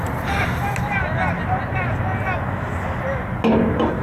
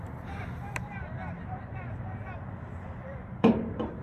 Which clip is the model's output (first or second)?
second